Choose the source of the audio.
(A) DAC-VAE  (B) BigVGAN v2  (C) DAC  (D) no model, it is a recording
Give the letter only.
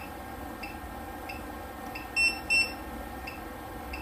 D